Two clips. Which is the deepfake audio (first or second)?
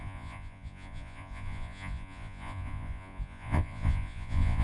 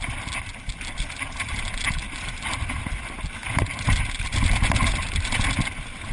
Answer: first